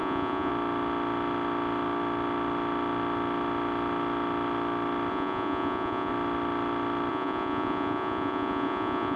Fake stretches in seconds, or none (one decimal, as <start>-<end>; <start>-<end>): 0.0-0.5; 5.1-6.1; 7.1-9.2